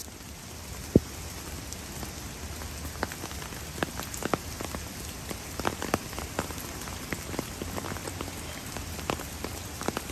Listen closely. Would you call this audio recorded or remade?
recorded